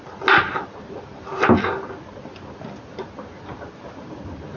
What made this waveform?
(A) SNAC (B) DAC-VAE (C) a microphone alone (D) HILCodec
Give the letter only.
C